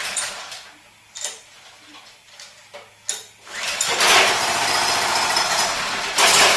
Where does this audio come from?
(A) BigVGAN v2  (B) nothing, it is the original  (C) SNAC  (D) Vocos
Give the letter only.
B